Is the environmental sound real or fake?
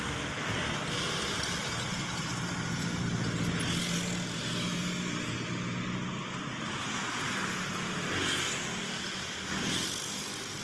real